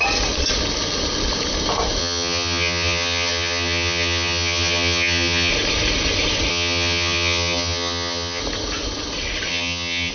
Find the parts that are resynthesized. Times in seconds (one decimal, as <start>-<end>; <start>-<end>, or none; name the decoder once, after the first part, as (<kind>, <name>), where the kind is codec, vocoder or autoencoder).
2.0-5.5 (vocoder, HiFi-GAN); 6.5-8.4; 9.5-10.1